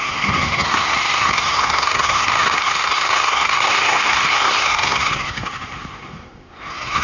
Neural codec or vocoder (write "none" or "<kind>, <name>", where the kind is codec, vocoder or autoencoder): codec, SNAC